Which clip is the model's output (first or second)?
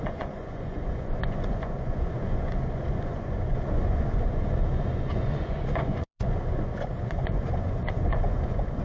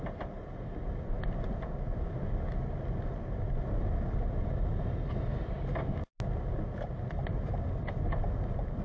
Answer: first